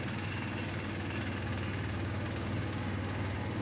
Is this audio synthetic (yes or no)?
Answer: yes